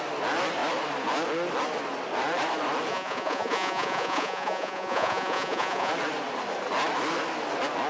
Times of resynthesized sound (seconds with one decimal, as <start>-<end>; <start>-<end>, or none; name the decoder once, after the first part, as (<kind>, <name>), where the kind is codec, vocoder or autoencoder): 2.9-5.9 (vocoder, Vocos)